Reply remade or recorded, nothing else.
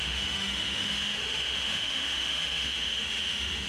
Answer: remade